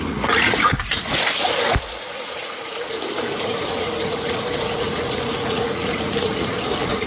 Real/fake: fake